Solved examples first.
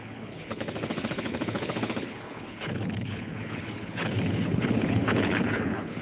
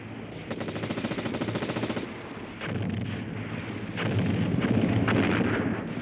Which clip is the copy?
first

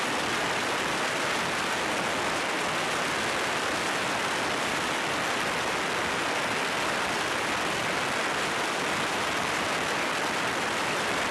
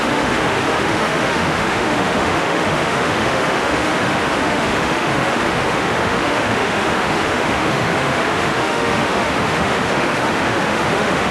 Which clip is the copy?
second